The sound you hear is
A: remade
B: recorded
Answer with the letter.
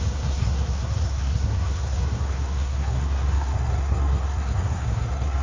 A